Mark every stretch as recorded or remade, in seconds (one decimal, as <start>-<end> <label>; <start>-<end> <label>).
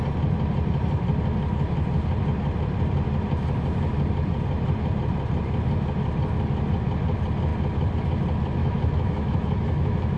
0.0-8.6 recorded; 8.6-10.2 remade